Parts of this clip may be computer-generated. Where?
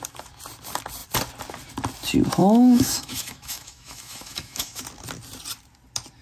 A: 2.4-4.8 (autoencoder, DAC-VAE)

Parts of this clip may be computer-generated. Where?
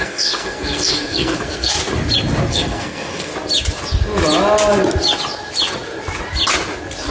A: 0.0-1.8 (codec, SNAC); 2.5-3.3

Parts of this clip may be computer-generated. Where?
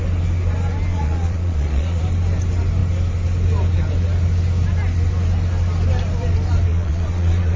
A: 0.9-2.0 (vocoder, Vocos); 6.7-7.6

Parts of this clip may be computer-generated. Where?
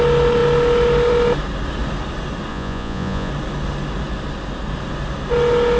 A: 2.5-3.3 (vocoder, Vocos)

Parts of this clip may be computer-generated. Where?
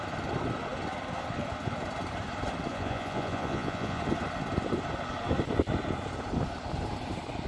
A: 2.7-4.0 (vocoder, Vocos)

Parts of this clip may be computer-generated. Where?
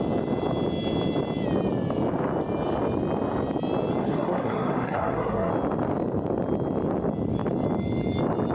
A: 4.0-5.5 (codec, SNAC)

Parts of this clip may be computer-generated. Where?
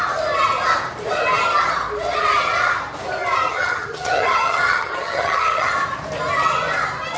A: 3.5-5.7 (vocoder, HiFi-GAN)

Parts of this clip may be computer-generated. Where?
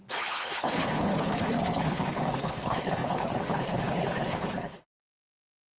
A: 0.0-5.8 (codec, HILCodec)